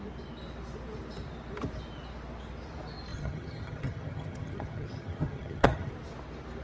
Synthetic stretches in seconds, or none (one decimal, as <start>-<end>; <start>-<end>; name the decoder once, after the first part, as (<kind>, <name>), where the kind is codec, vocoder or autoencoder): 3.1-5.9 (vocoder, HiFi-GAN)